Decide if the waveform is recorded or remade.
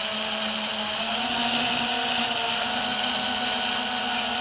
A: recorded